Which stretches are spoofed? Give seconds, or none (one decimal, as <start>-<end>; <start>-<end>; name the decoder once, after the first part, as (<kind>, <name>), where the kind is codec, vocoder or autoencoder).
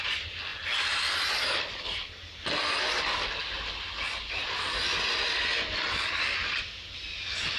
none